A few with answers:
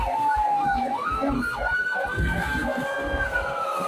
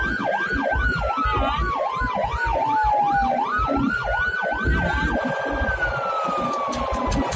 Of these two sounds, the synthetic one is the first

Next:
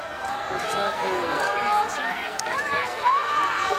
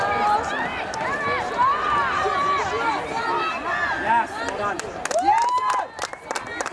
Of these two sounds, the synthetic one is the first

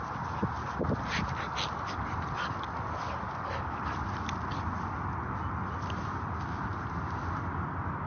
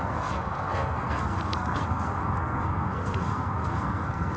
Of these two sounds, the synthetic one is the second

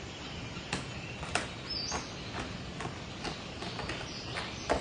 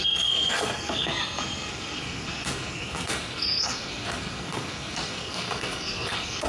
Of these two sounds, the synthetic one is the second